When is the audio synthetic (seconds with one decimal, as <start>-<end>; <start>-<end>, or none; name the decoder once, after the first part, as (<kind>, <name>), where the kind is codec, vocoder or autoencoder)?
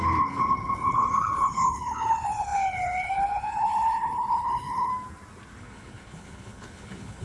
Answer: 0.0-4.9 (codec, HILCodec); 5.6-7.2